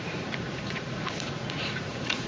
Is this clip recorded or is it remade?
remade